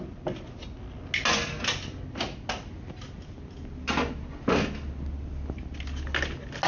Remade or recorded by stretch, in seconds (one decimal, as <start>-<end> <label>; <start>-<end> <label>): 0.0-6.7 recorded